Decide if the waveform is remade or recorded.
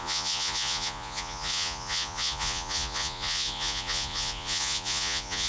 remade